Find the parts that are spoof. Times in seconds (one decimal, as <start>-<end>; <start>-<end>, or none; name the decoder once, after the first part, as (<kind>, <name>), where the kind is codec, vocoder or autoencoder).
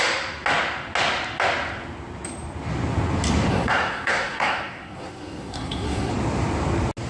3.5-6.1 (codec, SNAC)